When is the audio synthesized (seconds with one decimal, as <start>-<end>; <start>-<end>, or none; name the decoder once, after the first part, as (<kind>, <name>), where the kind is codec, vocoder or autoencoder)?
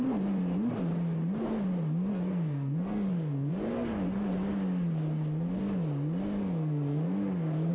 2.1-3.5 (codec, SNAC); 6.4-7.7